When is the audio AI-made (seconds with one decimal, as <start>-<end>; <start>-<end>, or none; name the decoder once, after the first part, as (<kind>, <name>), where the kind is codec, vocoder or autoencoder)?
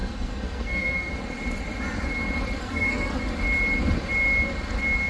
0.0-1.1 (codec, SNAC); 2.6-3.2